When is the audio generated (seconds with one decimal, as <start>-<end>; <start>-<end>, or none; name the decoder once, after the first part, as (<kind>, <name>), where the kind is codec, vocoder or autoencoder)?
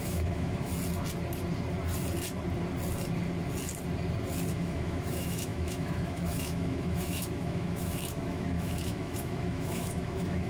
0.0-0.7 (autoencoder, DAC-VAE); 4.5-10.5